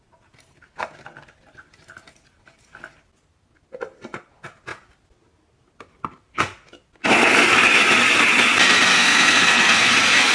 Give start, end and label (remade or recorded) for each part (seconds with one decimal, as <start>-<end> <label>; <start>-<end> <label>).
0.0-8.9 recorded; 8.9-9.9 remade; 9.9-10.3 recorded